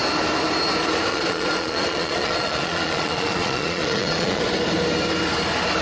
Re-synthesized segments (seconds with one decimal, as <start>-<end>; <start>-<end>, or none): 1.1-4.4